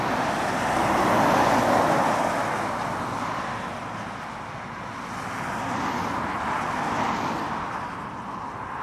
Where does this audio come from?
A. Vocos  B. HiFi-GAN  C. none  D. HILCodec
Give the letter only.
C